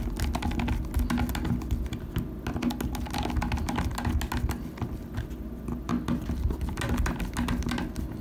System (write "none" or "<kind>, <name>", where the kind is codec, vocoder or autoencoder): none